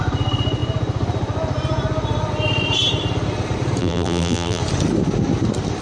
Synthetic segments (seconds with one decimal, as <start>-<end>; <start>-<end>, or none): 3.8-4.6